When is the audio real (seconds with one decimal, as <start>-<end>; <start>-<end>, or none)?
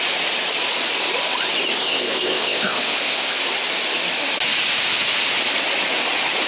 0.0-1.8; 3.4-6.5